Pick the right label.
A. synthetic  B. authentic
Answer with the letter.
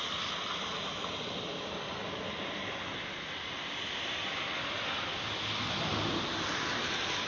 B